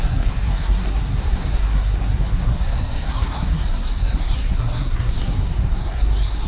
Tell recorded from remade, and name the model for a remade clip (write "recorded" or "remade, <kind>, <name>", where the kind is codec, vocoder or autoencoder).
remade, codec, SNAC